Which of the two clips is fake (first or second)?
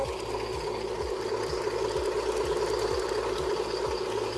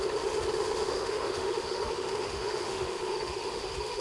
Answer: second